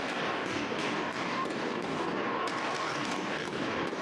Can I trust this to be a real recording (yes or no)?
no